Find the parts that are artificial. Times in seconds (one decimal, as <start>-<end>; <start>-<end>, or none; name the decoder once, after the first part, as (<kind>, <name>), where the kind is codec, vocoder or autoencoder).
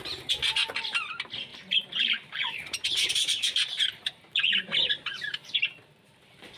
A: 1.5-5.5 (vocoder, BigVGAN v2)